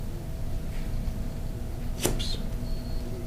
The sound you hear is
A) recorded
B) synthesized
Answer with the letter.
A